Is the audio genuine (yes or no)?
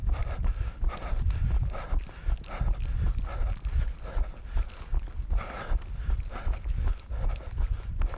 yes